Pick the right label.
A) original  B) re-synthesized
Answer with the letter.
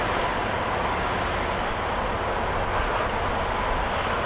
A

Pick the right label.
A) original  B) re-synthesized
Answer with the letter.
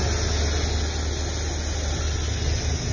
A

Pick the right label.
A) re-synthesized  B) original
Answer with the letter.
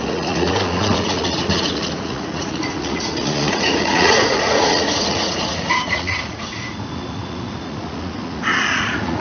A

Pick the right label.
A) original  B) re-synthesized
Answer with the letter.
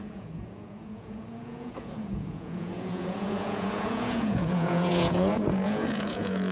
B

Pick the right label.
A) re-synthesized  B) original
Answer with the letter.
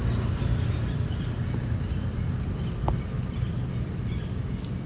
B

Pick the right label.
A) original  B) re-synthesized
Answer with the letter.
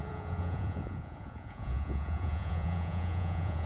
B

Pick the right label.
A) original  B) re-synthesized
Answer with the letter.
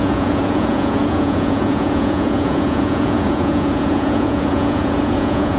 B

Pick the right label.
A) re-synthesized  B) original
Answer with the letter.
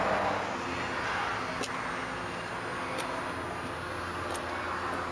B